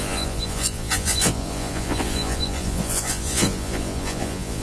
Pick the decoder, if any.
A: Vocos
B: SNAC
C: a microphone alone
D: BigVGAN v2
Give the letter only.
A